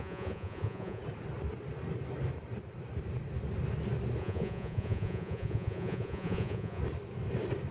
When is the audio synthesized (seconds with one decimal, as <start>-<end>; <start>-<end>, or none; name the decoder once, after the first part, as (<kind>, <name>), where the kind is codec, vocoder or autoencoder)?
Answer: 0.0-1.0 (vocoder, Vocos); 4.2-6.8